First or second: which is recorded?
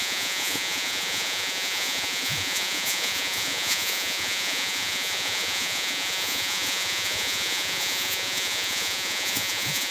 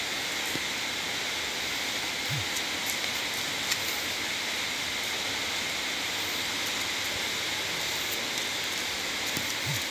second